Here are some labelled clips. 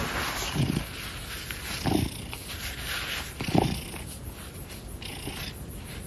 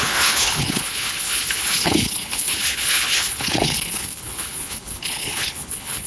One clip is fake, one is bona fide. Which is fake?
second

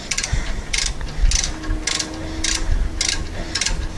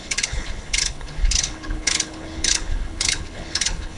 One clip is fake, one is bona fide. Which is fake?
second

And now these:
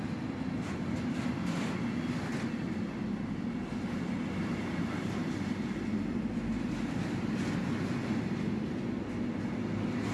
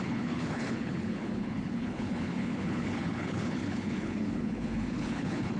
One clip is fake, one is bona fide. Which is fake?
second